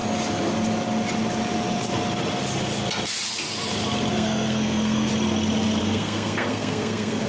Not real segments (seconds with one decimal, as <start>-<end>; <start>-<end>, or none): 4.1-5.1; 5.8-7.3